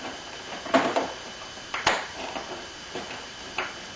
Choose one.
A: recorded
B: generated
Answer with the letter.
B